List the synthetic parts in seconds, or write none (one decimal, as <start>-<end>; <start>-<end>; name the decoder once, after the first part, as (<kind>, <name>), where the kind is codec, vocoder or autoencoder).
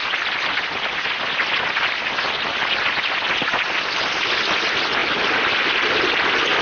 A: 0.0-0.5 (vocoder, BigVGAN v2)